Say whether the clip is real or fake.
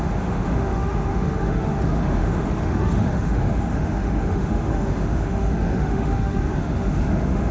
fake